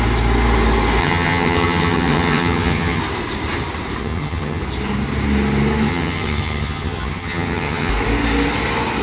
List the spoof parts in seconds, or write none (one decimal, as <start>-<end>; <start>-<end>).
1.0-3.0; 4.0-4.6; 5.9-7.9